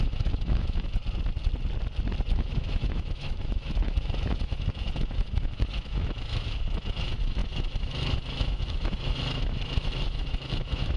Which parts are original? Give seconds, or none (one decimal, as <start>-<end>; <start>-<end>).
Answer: 1.0-2.3